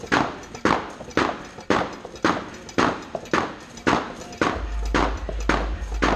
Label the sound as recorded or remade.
recorded